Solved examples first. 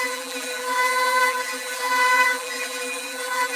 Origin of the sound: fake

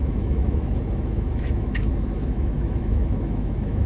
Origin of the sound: fake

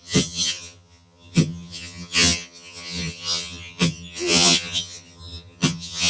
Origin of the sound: fake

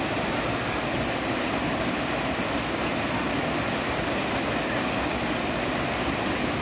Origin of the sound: real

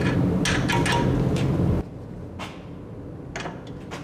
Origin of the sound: real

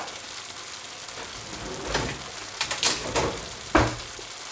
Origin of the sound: real